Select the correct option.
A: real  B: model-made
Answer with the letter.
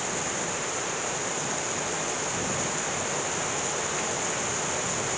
A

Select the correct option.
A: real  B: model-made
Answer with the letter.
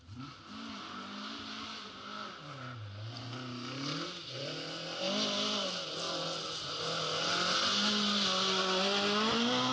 A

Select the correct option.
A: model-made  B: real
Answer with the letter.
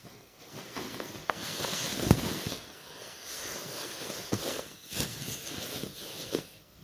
A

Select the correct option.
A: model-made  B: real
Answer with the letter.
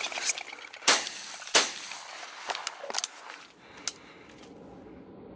B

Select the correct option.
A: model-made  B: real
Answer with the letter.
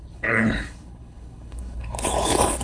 A